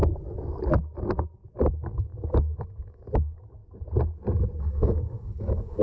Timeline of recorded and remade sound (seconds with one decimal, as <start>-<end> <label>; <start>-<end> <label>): 0.0-1.7 recorded; 1.7-3.6 remade; 3.6-4.6 recorded; 4.6-5.8 remade

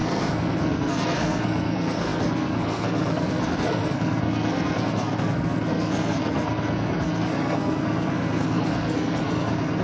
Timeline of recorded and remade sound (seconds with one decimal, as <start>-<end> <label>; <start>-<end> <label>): 0.0-9.8 remade

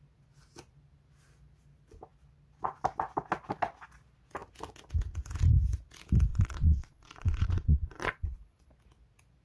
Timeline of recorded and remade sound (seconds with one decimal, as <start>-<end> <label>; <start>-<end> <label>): 0.0-6.3 recorded; 6.3-8.7 remade; 8.7-9.4 recorded

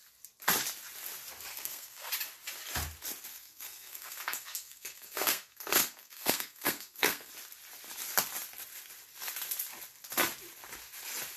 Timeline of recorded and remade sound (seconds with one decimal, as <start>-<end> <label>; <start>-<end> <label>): 0.0-1.5 recorded; 1.5-2.1 remade; 2.1-3.3 recorded; 3.3-7.3 remade; 7.3-11.4 recorded

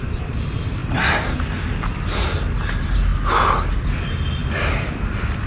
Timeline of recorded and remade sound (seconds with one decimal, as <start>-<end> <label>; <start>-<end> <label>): 0.0-0.8 remade; 0.8-2.2 recorded; 2.2-3.1 remade; 3.1-3.7 recorded; 3.7-5.5 remade